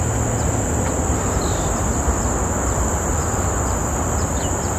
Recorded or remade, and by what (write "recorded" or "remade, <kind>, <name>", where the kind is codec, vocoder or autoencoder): recorded